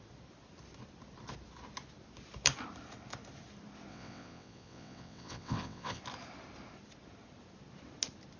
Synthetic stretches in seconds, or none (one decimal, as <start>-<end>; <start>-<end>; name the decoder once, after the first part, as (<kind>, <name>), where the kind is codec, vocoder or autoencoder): 3.9-6.0 (vocoder, WaveNeXt)